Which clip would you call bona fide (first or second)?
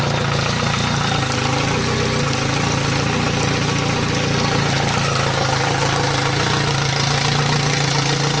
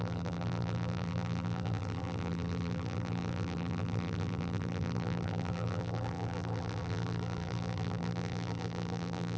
first